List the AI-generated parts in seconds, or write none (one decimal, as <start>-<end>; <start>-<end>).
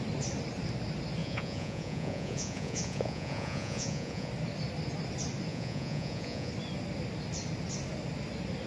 1.2-4.3; 5.5-6.5